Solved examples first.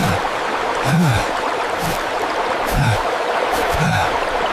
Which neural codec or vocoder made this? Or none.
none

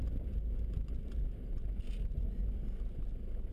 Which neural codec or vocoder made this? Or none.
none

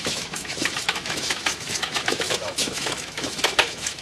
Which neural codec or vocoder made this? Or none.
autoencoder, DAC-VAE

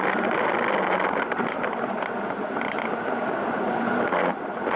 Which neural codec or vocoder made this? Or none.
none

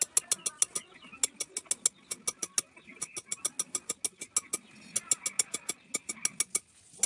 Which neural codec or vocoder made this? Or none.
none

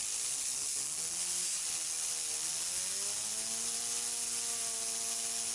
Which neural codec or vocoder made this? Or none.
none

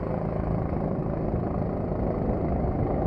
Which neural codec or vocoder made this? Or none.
none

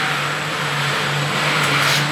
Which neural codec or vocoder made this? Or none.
none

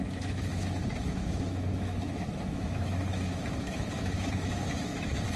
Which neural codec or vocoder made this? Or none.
autoencoder, DAC-VAE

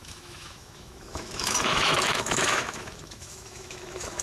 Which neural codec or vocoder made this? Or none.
autoencoder, DAC-VAE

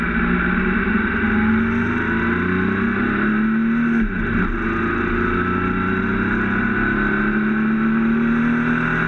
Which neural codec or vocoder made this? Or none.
none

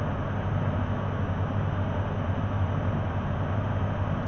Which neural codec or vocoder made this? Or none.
none